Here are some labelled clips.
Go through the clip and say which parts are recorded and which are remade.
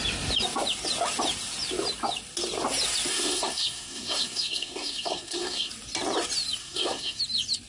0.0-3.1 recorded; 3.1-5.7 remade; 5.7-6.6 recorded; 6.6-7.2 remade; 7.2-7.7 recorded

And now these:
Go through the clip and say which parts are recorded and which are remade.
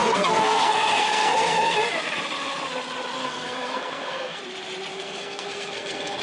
0.0-1.9 remade; 1.9-3.2 recorded; 3.2-4.4 remade; 4.4-4.9 recorded; 4.9-6.2 remade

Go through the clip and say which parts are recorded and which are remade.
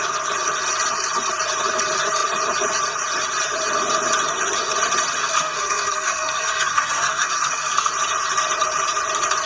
0.0-5.2 recorded; 5.2-7.9 remade; 7.9-9.5 recorded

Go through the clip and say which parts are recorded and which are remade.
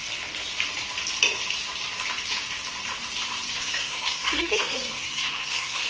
0.0-3.5 recorded; 3.5-5.9 remade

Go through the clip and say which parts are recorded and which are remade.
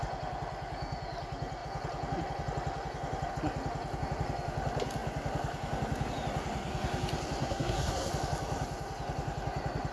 0.0-7.4 recorded; 7.4-8.1 remade; 8.1-9.9 recorded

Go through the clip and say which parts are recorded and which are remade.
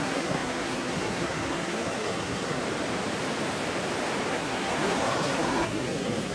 0.0-2.6 remade; 2.6-4.3 recorded; 4.3-6.3 remade